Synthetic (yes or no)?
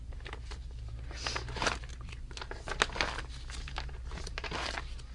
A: no